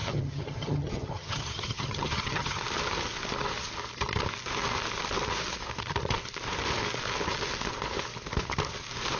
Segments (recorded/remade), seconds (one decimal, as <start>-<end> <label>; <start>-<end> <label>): 0.0-2.6 remade; 2.6-9.2 recorded